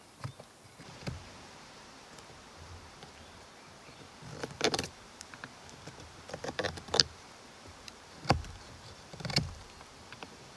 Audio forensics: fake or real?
fake